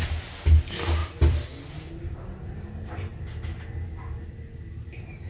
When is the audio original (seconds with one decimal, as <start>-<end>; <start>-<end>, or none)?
0.0-5.3